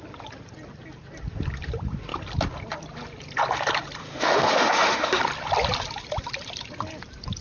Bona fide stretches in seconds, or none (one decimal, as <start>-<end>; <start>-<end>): 0.0-4.0; 5.2-7.4